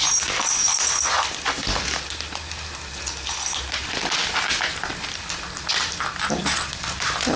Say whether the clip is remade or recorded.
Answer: recorded